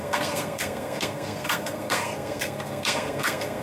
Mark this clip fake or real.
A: fake